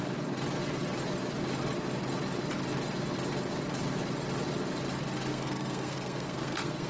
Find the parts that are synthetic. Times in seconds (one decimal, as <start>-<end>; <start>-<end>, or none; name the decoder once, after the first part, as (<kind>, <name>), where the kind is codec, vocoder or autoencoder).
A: 5.3-6.9 (codec, SNAC)